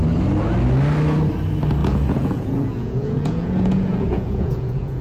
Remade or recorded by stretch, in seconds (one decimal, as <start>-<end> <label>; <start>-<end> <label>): 0.0-1.8 recorded; 1.8-5.0 remade